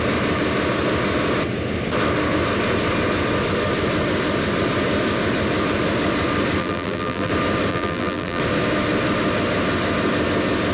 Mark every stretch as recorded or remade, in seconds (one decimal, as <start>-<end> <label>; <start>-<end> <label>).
0.0-6.6 recorded; 6.6-7.3 remade; 7.3-7.7 recorded; 7.7-8.4 remade; 8.4-10.7 recorded